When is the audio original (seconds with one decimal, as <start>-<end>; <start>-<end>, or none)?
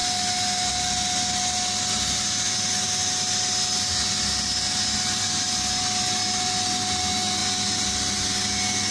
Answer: 0.0-8.9